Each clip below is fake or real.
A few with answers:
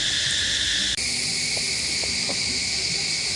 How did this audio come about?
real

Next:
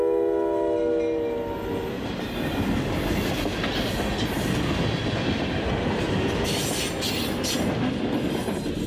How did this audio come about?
real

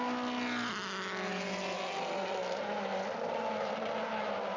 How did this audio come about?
real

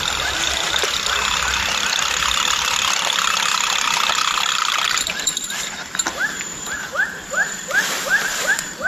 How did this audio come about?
fake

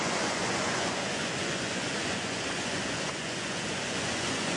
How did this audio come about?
fake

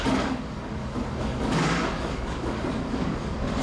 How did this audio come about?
fake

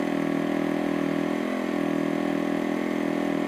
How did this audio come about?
real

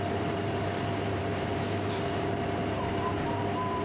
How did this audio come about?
fake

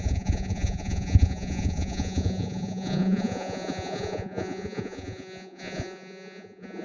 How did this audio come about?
fake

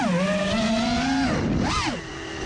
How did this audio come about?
real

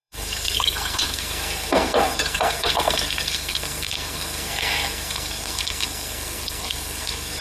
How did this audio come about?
fake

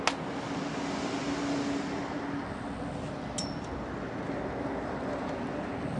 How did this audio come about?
real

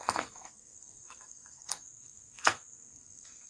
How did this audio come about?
fake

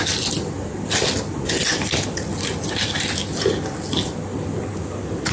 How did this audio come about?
real